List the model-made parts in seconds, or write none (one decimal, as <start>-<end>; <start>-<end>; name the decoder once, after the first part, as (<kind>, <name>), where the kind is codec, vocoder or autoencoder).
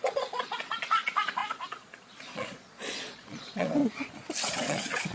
0.0-3.8 (vocoder, Vocos); 4.5-5.1